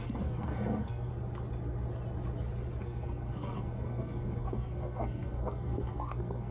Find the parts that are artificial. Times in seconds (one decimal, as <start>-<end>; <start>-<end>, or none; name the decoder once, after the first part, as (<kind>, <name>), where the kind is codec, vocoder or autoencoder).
0.0-1.1 (codec, SNAC); 2.8-6.5